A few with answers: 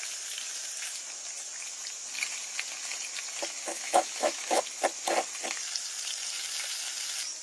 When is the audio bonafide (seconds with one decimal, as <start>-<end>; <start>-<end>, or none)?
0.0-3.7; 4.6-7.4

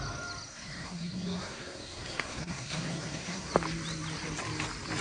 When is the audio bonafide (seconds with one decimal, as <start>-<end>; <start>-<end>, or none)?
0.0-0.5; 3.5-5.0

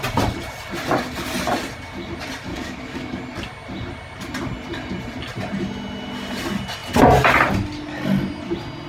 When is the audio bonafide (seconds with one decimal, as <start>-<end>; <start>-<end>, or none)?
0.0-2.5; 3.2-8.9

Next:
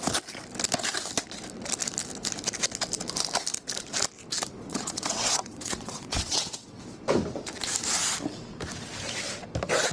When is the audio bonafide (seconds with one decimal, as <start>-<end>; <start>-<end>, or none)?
0.0-4.7; 6.8-9.9

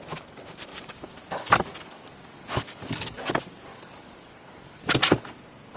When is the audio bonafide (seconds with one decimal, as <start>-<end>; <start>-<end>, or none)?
0.0-0.7; 3.3-3.7; 4.8-5.8

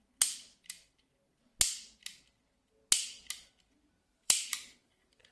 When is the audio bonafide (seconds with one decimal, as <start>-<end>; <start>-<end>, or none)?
0.0-4.0

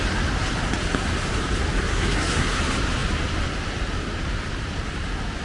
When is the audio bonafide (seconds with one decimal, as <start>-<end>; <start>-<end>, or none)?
0.0-1.9; 2.6-5.4